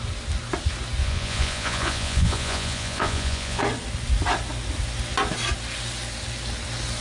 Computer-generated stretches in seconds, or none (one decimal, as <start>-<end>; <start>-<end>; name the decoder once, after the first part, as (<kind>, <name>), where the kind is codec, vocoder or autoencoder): 1.0-3.6 (vocoder, Vocos)